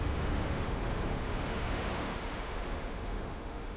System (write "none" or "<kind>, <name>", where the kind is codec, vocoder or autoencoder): autoencoder, DAC-VAE